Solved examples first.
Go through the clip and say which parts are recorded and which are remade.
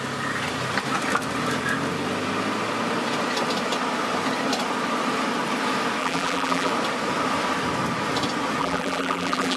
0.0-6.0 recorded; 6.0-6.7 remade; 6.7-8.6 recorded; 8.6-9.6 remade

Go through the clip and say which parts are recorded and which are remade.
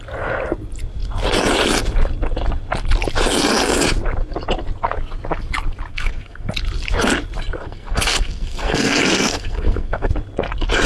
0.0-5.9 recorded; 5.9-6.5 remade; 6.5-7.5 recorded; 7.5-10.1 remade; 10.1-10.9 recorded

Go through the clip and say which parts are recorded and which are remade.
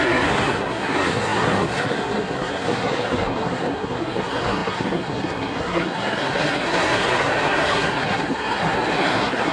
0.0-9.5 remade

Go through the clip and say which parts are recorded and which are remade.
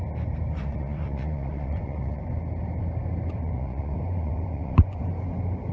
0.0-0.6 recorded; 0.6-2.2 remade; 2.2-3.4 recorded; 3.4-5.0 remade; 5.0-5.7 recorded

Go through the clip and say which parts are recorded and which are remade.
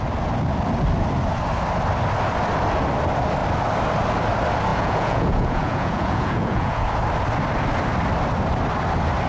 0.0-4.7 recorded; 4.7-6.9 remade; 6.9-9.3 recorded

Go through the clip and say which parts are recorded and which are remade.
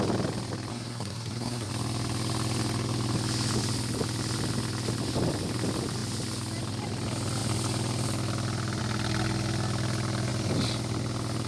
0.0-0.7 recorded; 0.7-1.7 remade; 1.7-11.5 recorded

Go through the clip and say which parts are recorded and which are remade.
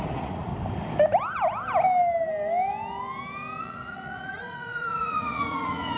0.0-0.5 remade; 0.5-3.6 recorded; 3.6-6.0 remade